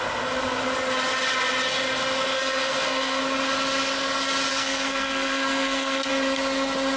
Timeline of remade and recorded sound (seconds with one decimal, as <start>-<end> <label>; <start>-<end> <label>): 0.0-2.3 recorded; 2.3-3.2 remade; 3.2-4.5 recorded; 4.5-6.1 remade; 6.1-7.0 recorded